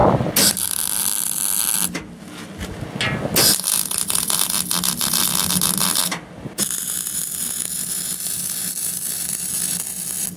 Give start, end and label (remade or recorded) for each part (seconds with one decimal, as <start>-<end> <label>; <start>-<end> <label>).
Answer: 0.0-10.4 recorded